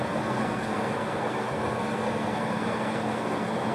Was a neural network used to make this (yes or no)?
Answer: yes